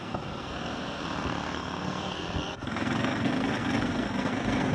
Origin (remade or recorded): remade